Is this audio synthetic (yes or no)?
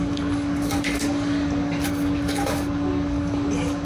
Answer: yes